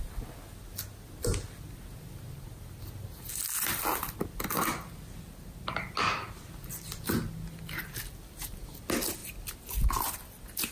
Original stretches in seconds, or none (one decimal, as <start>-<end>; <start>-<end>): 0.0-10.7